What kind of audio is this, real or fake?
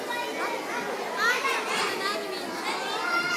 fake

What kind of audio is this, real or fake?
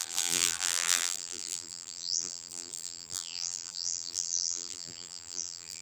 fake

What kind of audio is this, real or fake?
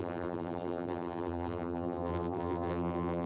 fake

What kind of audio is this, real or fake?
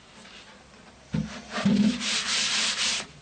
fake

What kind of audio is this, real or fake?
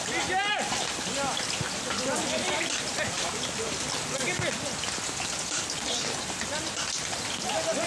real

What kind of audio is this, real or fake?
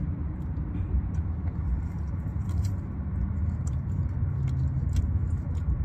fake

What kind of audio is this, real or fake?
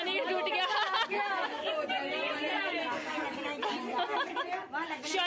real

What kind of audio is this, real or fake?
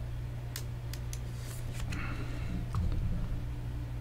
real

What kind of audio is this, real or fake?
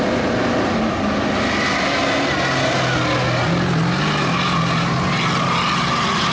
real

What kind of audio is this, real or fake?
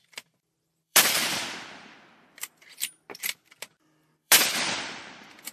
fake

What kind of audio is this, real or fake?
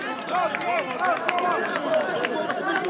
fake